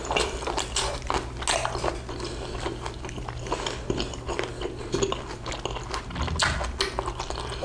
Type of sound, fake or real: real